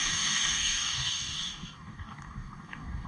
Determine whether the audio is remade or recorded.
remade